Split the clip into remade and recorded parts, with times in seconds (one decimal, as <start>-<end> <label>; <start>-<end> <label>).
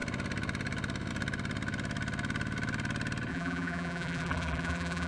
0.0-3.3 recorded; 3.3-5.1 remade